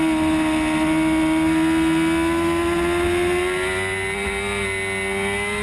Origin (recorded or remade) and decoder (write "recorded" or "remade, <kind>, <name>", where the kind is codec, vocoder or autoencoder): recorded